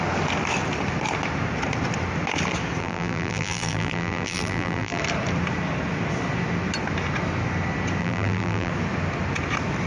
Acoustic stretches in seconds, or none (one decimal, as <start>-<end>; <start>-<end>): 0.0-2.8; 5.0-8.0; 8.7-9.9